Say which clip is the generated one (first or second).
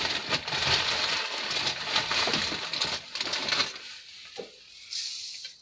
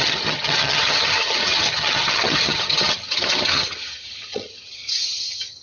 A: second